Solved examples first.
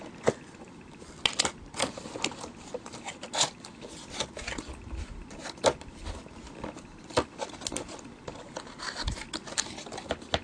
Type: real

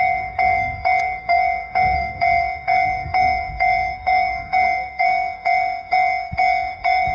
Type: fake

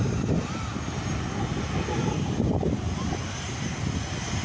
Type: real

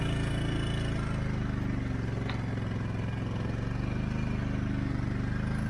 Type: real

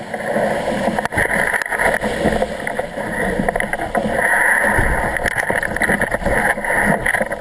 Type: real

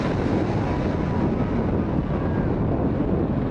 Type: real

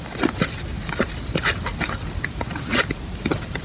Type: real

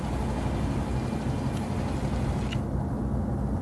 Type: real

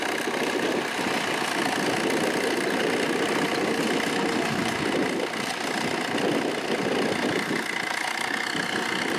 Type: real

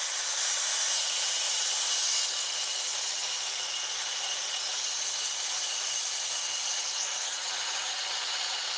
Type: fake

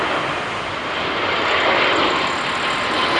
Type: real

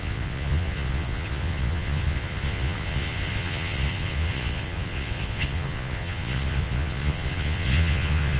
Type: fake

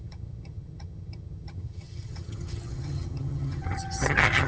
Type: fake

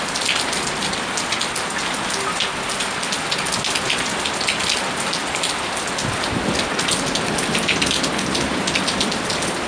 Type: real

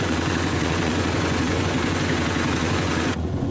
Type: fake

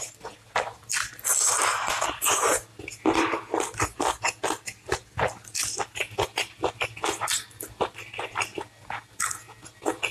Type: real